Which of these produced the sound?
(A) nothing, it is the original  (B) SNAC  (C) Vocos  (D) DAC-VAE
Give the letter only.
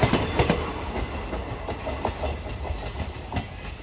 A